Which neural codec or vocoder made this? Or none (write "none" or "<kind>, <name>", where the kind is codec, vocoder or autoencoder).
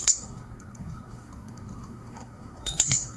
codec, SNAC